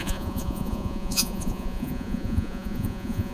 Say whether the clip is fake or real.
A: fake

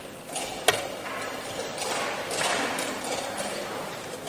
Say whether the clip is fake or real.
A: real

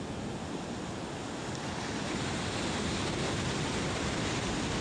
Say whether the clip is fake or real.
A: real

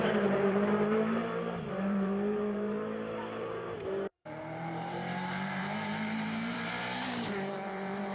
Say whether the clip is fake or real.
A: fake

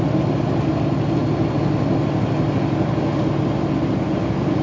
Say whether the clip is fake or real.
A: real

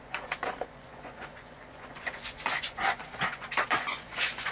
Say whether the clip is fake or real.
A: fake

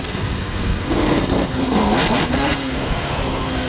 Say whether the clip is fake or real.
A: fake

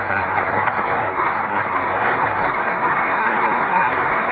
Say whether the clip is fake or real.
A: fake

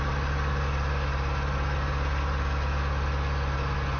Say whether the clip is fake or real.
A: real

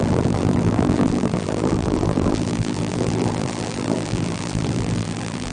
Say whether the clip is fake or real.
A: fake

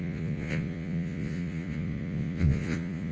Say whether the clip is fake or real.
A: fake